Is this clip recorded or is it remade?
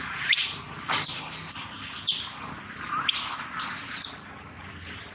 recorded